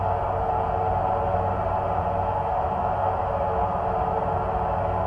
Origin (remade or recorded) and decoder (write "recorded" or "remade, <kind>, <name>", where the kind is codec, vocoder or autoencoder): recorded